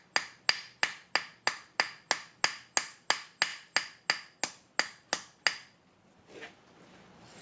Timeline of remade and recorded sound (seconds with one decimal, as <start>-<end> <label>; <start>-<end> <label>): 0.0-7.4 recorded